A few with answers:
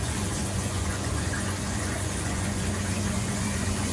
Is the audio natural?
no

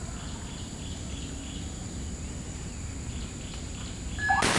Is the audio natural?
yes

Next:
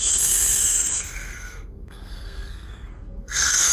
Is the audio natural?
no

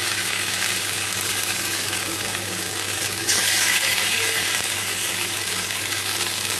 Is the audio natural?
no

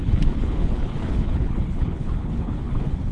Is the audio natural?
no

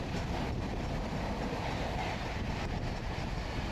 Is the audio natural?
yes